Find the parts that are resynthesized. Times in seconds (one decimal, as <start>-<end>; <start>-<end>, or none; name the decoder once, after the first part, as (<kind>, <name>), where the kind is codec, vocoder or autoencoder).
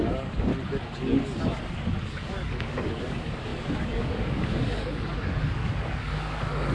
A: 0.0-0.5 (codec, DAC); 2.1-6.7